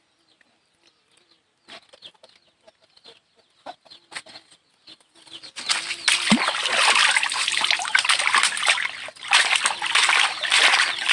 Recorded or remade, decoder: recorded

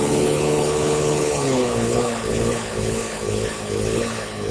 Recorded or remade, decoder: remade, codec, HILCodec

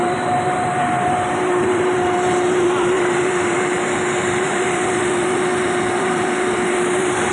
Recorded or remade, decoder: remade, vocoder, BigVGAN v2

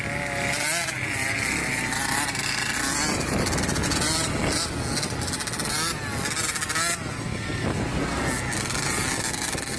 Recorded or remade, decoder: recorded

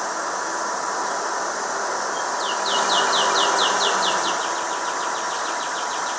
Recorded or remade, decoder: recorded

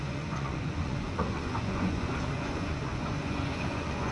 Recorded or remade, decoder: remade, vocoder, Vocos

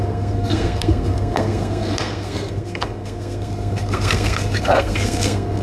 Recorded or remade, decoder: remade, codec, SNAC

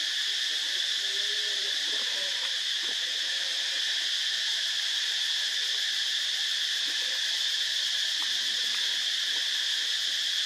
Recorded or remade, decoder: remade, vocoder, BigVGAN v2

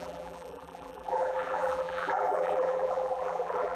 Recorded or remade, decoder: remade, vocoder, BigVGAN v2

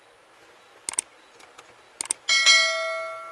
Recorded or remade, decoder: recorded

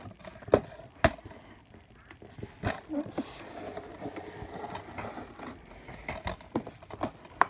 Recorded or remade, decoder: recorded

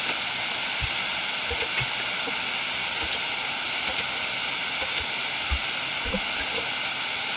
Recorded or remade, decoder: recorded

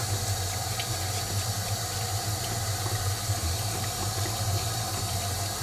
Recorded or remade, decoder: recorded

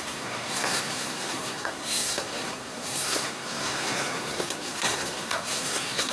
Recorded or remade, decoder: remade, codec, SNAC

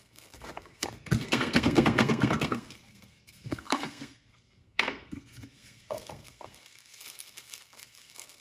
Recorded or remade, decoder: remade, codec, SNAC